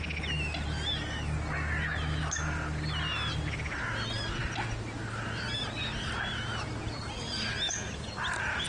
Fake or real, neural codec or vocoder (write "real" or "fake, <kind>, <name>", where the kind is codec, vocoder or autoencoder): real